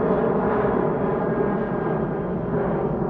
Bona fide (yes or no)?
yes